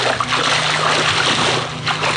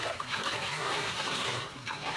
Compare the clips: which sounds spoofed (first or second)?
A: second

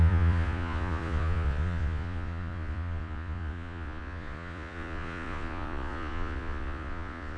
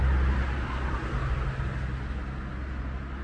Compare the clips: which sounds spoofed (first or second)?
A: first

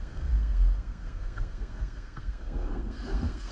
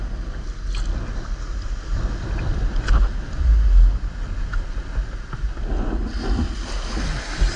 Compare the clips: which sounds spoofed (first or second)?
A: first